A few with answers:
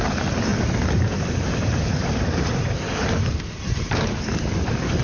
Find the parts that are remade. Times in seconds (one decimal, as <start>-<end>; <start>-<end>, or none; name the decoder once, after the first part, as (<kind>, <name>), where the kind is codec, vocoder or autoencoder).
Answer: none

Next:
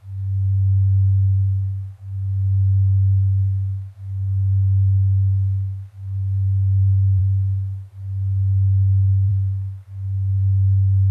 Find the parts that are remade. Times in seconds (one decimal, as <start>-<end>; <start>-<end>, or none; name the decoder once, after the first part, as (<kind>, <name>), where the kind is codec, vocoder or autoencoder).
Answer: 0.0-7.2 (codec, SNAC); 9.3-11.1

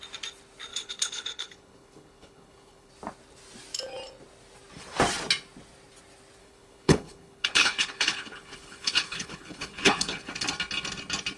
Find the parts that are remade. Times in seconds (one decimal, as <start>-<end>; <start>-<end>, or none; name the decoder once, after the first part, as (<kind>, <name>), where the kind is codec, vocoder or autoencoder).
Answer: 0.7-2.9 (codec, HILCodec); 6.4-10.3